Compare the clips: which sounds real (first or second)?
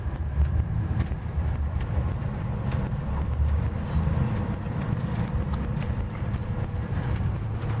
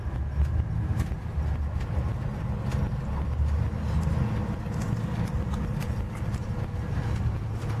second